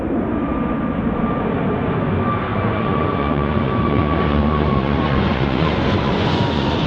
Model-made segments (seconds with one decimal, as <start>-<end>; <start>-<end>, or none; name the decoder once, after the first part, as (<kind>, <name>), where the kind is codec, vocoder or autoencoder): 2.5-6.9 (vocoder, Vocos)